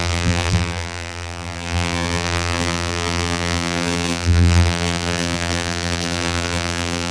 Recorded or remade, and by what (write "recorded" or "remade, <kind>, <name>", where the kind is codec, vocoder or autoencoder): remade, vocoder, BigVGAN v2